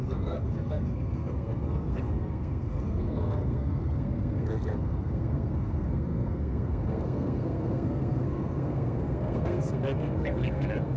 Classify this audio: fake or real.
fake